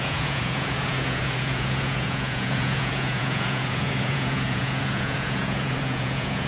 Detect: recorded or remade remade